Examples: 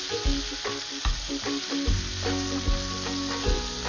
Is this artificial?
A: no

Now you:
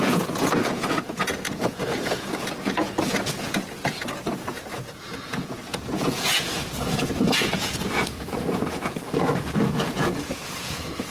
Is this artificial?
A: yes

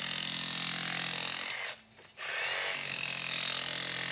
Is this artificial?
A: no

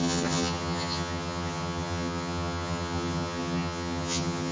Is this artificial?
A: yes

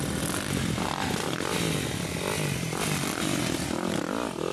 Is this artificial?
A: no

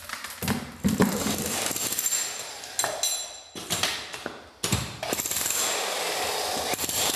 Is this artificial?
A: no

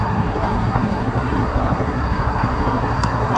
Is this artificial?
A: yes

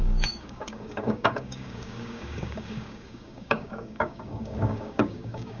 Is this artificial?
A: yes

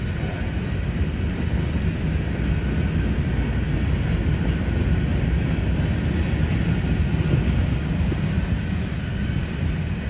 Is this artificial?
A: no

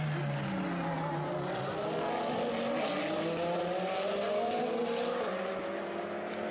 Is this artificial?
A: no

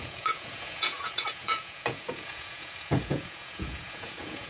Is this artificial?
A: yes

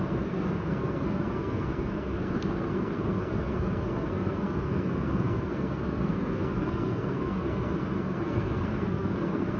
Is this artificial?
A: yes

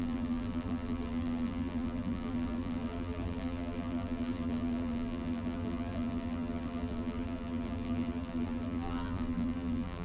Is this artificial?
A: yes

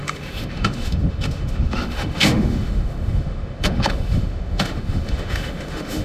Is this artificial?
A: yes